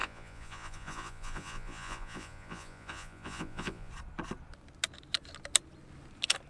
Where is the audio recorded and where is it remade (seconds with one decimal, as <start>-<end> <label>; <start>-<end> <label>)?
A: 0.0-3.9 remade; 3.9-6.5 recorded